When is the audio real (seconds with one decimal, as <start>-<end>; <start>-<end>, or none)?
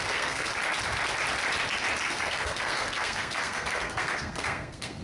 0.5-2.0